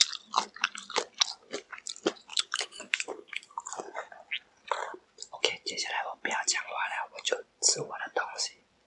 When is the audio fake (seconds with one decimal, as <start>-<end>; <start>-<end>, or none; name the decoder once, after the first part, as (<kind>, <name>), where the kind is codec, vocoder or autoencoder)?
2.3-3.7 (codec, DAC)